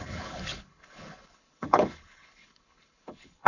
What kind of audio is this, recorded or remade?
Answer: remade